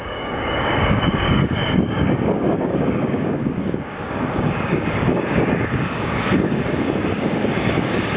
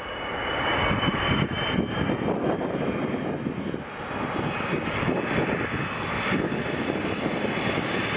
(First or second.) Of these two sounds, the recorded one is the second